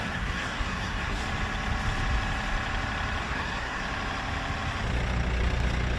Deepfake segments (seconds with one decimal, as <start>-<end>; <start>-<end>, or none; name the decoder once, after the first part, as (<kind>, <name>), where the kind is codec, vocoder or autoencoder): 0.0-1.2 (codec, SNAC); 3.2-3.8